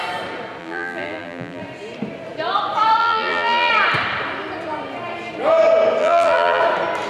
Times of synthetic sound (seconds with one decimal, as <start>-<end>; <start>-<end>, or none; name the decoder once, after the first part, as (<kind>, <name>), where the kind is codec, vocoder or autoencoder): 0.6-1.6 (vocoder, BigVGAN v2); 3.0-3.7; 6.0-6.6